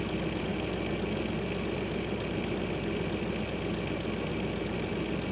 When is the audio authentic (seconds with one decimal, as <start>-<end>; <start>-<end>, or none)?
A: 0.0-5.3

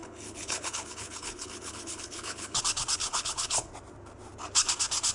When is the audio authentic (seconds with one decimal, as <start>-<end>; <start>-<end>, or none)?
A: 2.6-3.0; 3.7-5.1

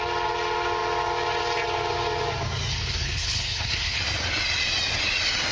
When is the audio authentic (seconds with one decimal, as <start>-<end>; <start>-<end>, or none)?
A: 0.0-2.7; 4.0-5.5

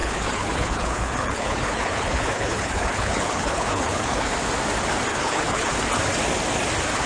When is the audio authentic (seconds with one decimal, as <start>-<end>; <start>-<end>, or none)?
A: 4.3-5.1; 5.7-7.1

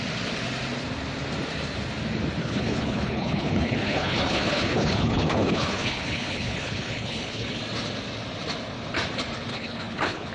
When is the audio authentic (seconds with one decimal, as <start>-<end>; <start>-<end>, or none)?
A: 0.0-2.4; 7.6-9.5

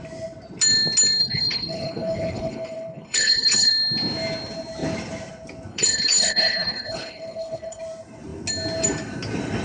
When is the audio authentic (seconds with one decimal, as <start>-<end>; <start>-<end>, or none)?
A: 0.0-1.2; 3.7-5.7; 7.8-9.6

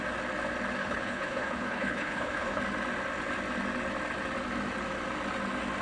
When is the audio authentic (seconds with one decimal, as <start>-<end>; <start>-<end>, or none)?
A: 0.0-0.8; 2.6-5.8